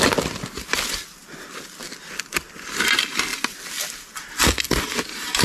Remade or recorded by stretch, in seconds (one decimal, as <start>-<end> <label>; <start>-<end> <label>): 0.0-5.4 recorded